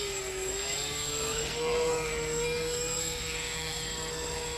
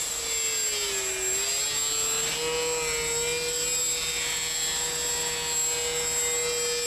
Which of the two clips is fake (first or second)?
first